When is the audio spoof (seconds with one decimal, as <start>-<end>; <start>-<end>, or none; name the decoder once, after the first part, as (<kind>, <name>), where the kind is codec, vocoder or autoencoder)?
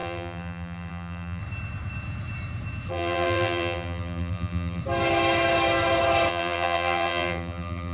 0.0-1.4 (vocoder, BigVGAN v2); 2.9-4.8; 6.3-7.9